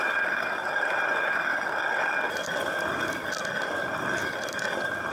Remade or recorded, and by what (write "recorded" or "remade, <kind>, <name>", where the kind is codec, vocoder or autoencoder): recorded